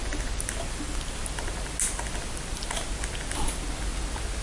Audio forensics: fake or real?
real